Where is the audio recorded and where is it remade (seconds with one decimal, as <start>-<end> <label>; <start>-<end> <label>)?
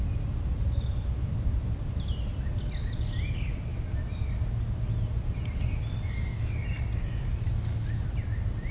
0.0-8.7 recorded